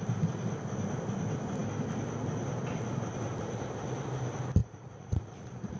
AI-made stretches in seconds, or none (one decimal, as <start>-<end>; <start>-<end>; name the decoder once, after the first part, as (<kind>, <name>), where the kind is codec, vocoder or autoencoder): 4.6-5.8 (vocoder, Vocos)